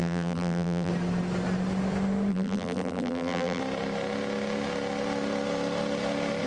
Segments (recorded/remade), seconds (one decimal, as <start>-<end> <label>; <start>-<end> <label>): 0.0-0.9 remade; 0.9-2.3 recorded; 2.3-3.6 remade; 3.6-6.5 recorded